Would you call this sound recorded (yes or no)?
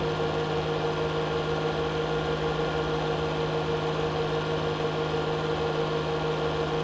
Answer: yes